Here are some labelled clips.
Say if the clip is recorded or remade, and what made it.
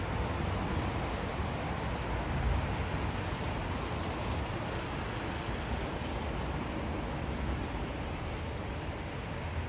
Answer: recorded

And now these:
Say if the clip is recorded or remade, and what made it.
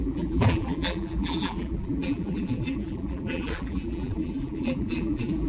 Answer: remade, vocoder, BigVGAN v2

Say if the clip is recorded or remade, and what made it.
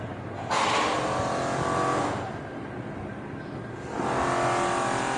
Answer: recorded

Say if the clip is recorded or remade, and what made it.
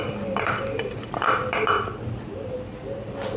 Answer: remade, vocoder, BigVGAN v2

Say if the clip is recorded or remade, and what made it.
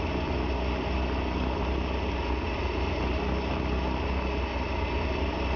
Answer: recorded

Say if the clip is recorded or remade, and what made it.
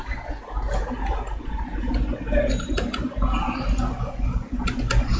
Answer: recorded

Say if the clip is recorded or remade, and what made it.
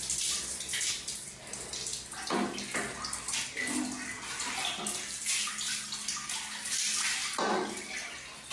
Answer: recorded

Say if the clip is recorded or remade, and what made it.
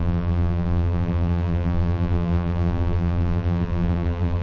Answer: remade, vocoder, BigVGAN v2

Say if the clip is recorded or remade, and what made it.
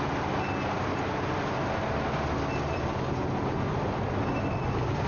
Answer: recorded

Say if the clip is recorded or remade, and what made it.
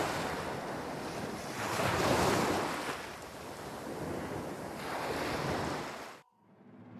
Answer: recorded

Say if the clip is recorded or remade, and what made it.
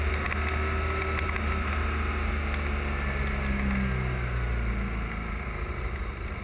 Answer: recorded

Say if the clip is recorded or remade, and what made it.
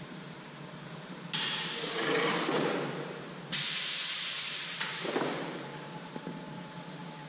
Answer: remade, vocoder, BigVGAN v2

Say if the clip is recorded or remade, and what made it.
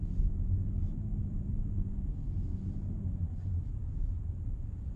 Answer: remade, vocoder, BigVGAN v2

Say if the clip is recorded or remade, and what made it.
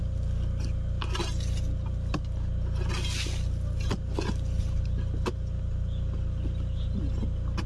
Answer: recorded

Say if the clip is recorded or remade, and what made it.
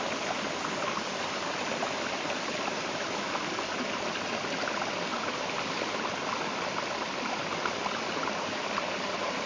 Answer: recorded